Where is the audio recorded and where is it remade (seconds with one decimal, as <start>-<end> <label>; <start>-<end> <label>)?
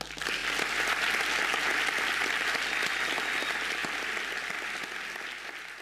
0.0-1.7 recorded; 1.7-2.6 remade; 2.6-5.8 recorded